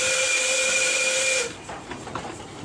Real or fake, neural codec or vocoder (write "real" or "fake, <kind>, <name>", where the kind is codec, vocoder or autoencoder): real